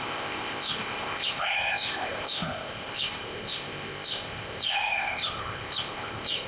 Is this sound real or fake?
fake